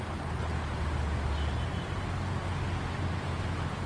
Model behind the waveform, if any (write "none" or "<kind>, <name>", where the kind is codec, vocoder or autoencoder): none